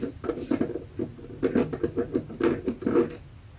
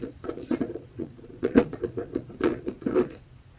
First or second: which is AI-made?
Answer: second